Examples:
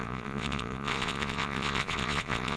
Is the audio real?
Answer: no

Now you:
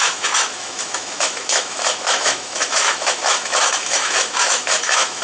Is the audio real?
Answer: no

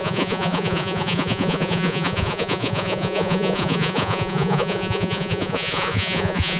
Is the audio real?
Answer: no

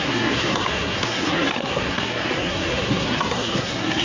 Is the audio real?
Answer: no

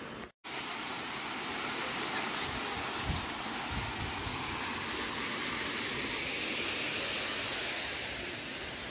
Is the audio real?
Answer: yes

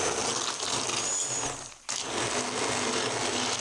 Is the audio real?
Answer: yes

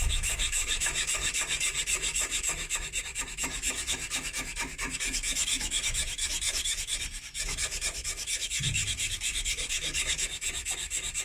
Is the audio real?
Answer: no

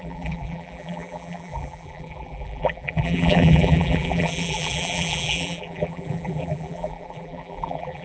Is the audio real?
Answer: no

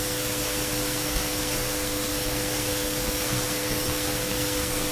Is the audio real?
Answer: no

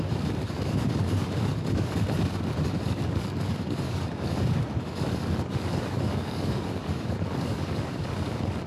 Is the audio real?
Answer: no